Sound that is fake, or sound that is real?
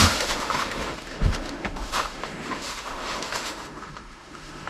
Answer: fake